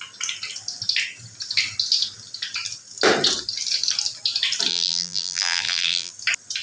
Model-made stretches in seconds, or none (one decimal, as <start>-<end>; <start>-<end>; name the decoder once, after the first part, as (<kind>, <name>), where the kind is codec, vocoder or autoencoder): 4.7-6.1 (vocoder, BigVGAN v2)